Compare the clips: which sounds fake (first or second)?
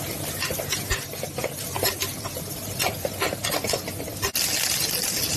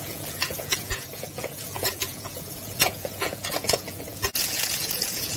second